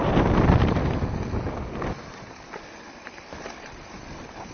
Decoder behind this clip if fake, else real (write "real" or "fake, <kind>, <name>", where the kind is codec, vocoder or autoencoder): real